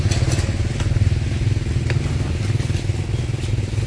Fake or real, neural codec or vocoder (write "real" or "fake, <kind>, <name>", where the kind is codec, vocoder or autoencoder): real